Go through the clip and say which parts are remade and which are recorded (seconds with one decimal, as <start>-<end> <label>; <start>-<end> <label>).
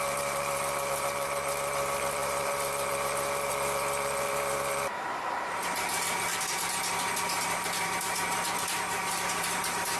0.0-10.0 remade